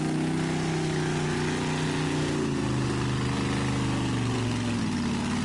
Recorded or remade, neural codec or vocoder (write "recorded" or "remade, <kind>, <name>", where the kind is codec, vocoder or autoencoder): recorded